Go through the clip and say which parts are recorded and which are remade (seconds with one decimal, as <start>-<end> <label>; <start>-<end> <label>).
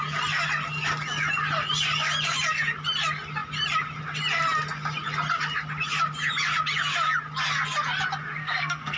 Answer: 0.0-8.4 recorded; 8.4-9.0 remade